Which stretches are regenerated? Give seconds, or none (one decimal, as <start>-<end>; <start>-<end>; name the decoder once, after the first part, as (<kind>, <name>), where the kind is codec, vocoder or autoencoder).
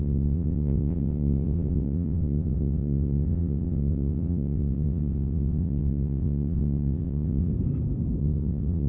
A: 0.0-7.5 (vocoder, WaveNeXt); 8.2-8.9